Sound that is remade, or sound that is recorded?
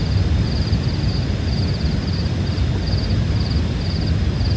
recorded